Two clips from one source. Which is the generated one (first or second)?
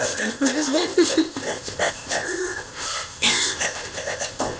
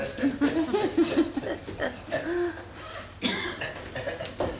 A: first